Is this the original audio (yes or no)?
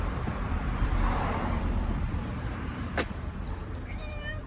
no